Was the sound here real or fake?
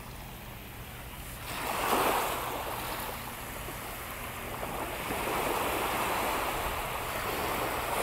real